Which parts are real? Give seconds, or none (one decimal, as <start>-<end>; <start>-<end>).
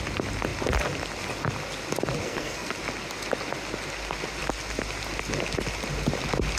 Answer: 0.0-2.2; 2.7-6.6